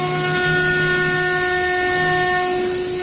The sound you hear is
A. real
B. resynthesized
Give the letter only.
A